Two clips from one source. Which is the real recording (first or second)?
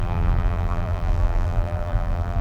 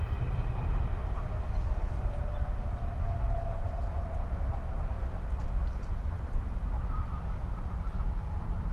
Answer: second